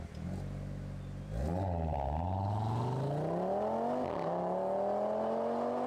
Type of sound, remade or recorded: recorded